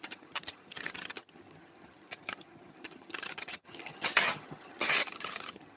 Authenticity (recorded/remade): remade